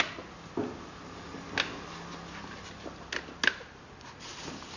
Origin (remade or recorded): recorded